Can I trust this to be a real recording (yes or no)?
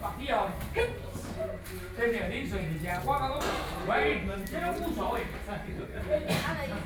no